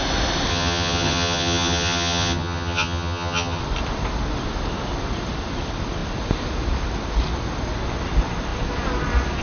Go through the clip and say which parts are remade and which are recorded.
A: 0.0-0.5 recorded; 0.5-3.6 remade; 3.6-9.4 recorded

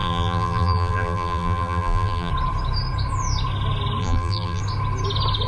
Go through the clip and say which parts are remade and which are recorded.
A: 0.0-2.3 remade; 2.3-4.0 recorded; 4.0-4.6 remade; 4.6-5.5 recorded